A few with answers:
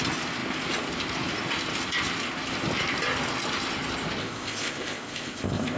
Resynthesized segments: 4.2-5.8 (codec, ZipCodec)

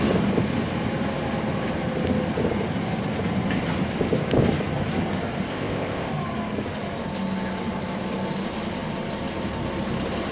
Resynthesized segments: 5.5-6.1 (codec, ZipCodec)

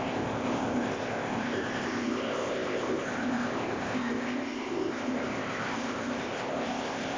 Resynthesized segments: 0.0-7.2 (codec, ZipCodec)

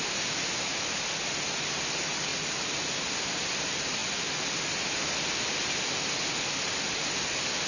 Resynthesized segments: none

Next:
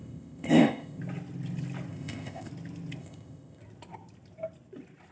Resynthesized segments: 0.0-1.0 (codec, ZipCodec); 1.9-2.5; 3.0-3.6